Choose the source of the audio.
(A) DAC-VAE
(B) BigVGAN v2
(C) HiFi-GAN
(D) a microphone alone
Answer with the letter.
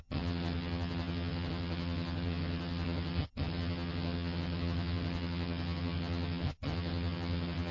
C